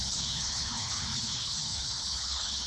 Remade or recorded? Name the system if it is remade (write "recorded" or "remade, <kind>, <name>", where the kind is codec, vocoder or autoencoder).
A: remade, codec, HILCodec